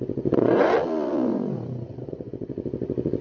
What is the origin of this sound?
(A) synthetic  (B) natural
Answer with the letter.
A